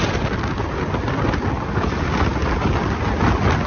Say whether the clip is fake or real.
real